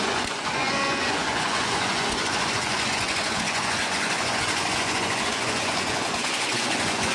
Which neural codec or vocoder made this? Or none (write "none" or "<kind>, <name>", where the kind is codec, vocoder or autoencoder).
vocoder, Vocos